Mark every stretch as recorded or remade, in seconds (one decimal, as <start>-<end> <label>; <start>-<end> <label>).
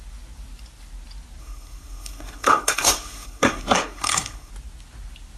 0.0-1.4 recorded; 1.4-4.5 remade; 4.5-5.4 recorded